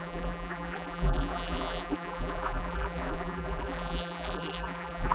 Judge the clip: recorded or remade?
remade